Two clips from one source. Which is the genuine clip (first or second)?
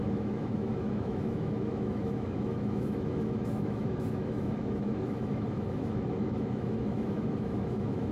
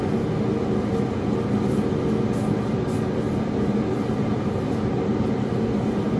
second